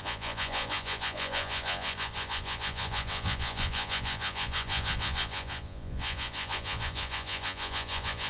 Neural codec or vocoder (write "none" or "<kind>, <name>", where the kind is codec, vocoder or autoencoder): vocoder, Vocos